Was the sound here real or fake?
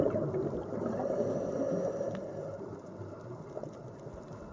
real